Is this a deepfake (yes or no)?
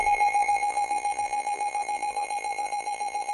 yes